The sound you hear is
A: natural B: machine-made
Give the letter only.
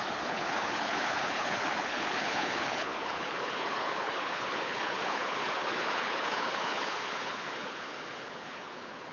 B